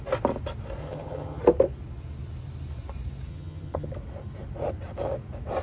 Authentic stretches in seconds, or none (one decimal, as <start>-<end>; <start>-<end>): 0.0-0.8; 1.4-3.3; 3.9-5.6